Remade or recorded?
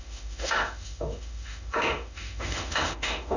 remade